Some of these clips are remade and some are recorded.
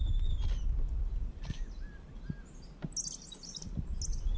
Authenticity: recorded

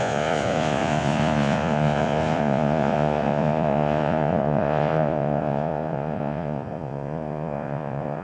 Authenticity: remade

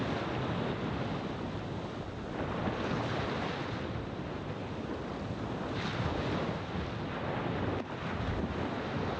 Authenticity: recorded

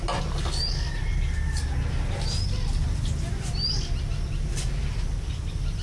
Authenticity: recorded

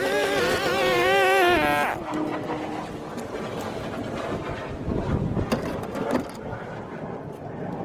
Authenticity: recorded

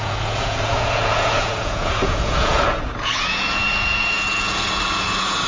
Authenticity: remade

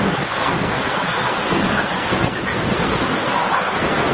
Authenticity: remade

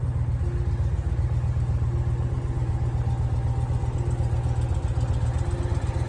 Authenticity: recorded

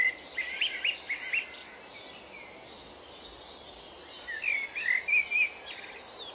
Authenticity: recorded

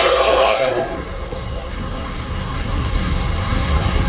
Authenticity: remade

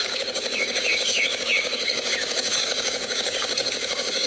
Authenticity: remade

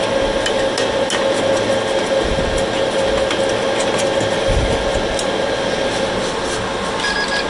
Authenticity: recorded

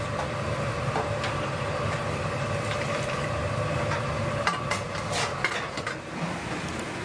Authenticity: recorded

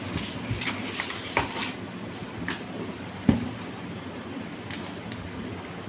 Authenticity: recorded